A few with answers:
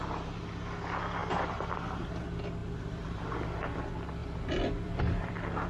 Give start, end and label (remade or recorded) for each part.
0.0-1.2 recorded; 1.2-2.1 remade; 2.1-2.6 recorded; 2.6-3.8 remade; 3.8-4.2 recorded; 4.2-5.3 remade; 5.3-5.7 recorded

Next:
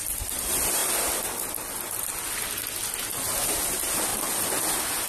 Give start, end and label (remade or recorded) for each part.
0.0-5.1 recorded

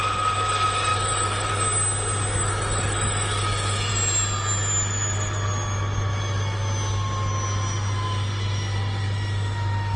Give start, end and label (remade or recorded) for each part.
0.0-0.9 recorded; 0.9-1.5 remade; 1.5-2.4 recorded; 2.4-3.9 remade; 3.9-10.0 recorded

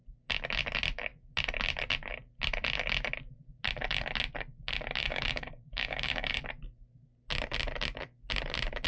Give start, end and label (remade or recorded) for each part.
0.0-5.0 recorded; 5.0-6.4 remade; 6.4-8.9 recorded

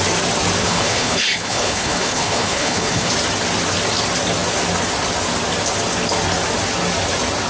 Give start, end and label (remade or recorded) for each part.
0.0-0.6 recorded; 0.6-3.1 remade; 3.1-7.5 recorded